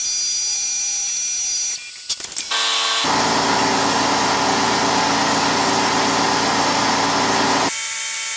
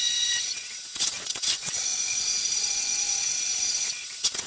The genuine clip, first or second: first